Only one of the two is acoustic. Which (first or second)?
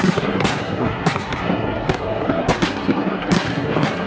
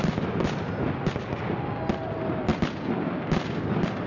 second